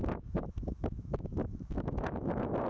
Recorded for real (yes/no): no